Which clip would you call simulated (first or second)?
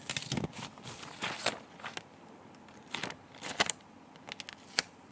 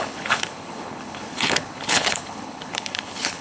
second